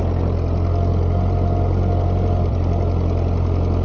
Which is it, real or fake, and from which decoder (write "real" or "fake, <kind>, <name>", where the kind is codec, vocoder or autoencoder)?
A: real